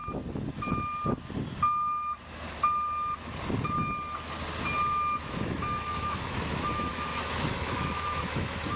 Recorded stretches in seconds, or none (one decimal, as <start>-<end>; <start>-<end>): 0.0-5.2